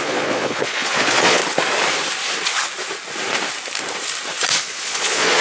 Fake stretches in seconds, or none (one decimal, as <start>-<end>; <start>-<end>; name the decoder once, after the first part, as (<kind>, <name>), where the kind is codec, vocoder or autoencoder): 0.0-1.4 (vocoder, Vocos); 4.6-5.4